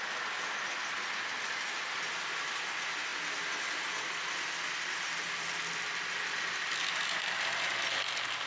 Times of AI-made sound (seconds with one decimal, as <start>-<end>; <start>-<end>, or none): none

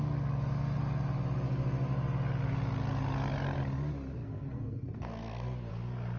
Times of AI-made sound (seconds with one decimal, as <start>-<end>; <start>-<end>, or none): 4.1-5.7

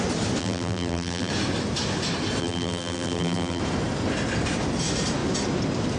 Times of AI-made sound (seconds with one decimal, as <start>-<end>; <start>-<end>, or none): 0.4-1.3; 2.4-3.6

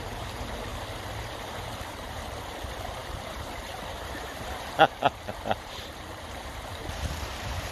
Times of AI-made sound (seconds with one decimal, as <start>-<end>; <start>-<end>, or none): 0.0-0.7; 1.3-7.7

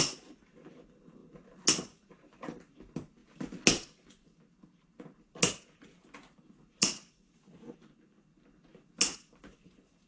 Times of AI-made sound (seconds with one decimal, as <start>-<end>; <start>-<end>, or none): none

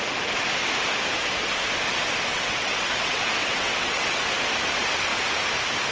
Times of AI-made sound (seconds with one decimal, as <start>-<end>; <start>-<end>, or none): 2.3-4.2

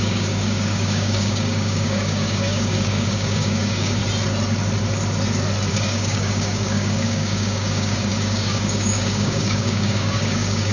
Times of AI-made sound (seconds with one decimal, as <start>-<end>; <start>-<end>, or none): 0.0-4.0; 5.7-10.7

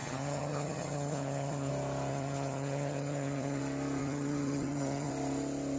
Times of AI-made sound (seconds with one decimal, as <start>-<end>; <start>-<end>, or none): 0.0-1.7; 2.1-3.6; 4.0-5.1